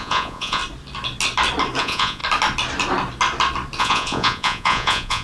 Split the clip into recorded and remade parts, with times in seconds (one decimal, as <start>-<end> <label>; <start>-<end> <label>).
0.0-0.6 remade; 0.6-1.8 recorded; 1.8-2.2 remade; 2.2-3.8 recorded; 3.8-5.2 remade